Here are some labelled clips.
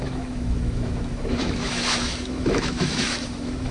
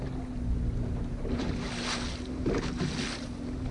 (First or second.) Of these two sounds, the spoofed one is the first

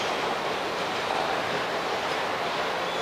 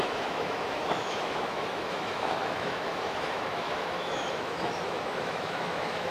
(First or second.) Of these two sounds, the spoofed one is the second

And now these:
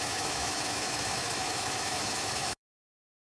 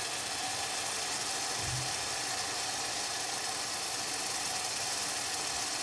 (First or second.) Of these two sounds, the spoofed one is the first